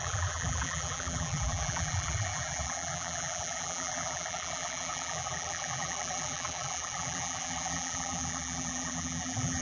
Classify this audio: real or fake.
fake